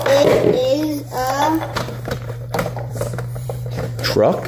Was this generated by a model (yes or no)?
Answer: yes